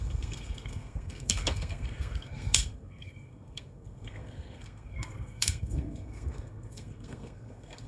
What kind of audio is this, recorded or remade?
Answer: remade